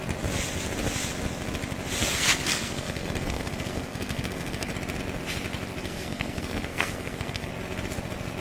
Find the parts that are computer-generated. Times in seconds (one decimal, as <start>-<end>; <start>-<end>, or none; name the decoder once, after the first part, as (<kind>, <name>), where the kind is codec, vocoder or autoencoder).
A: 2.0-4.7 (codec, SNAC); 5.8-7.5

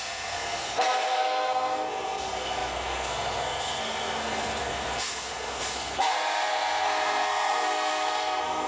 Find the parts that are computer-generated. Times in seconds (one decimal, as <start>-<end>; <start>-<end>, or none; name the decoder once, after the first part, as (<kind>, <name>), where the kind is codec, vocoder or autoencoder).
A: 0.0-8.7 (codec, SNAC)

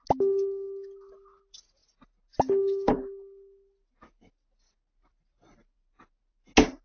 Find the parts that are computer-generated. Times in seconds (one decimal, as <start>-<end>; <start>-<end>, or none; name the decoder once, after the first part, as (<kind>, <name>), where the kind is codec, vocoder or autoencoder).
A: none

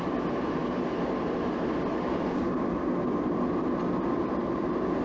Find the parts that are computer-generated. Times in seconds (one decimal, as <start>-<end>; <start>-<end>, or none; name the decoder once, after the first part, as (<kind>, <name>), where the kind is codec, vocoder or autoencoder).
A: none